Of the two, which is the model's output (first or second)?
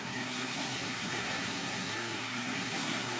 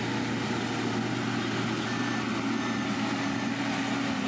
first